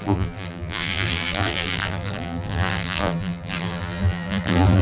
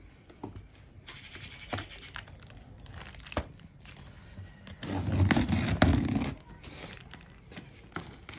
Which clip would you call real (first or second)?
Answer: second